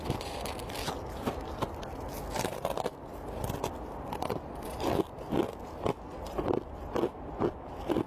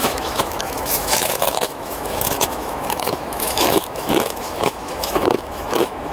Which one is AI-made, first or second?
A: second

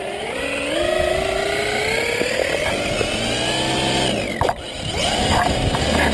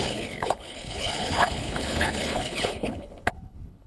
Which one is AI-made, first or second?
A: second